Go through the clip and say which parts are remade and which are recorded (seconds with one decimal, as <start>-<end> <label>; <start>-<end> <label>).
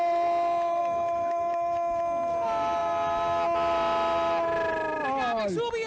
0.0-0.8 recorded; 0.8-2.0 remade; 2.0-5.9 recorded